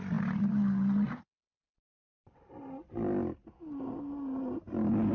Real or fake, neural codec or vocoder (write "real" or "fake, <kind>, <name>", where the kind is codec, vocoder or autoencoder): real